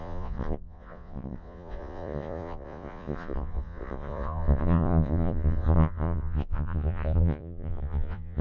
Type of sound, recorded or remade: remade